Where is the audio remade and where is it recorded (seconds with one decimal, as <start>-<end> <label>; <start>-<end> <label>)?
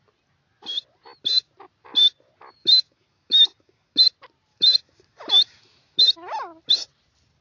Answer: 0.0-2.6 recorded; 2.6-4.0 remade; 4.0-4.5 recorded; 4.5-6.0 remade; 6.0-7.4 recorded